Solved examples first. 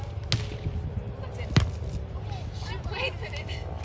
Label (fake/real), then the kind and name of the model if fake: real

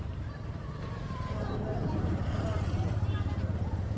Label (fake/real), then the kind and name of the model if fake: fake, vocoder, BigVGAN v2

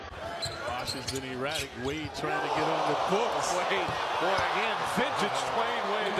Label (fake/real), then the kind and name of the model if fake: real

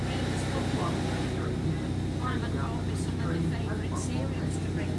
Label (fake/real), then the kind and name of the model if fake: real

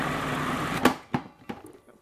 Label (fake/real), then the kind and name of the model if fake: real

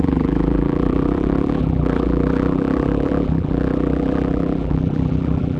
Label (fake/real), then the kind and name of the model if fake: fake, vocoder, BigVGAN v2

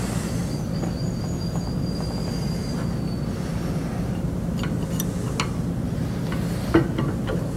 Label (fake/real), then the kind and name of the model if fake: real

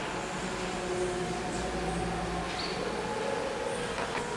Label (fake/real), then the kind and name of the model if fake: real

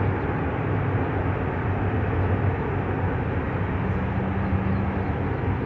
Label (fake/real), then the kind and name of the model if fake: real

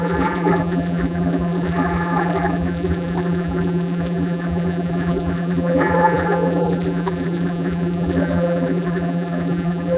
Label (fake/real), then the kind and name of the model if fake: fake, vocoder, BigVGAN v2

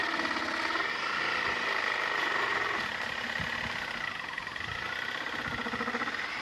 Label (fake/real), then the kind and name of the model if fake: real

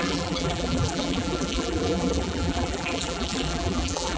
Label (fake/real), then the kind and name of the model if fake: fake, vocoder, BigVGAN v2